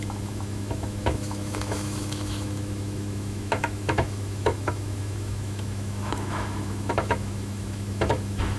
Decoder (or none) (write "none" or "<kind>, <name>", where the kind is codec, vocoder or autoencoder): autoencoder, DAC-VAE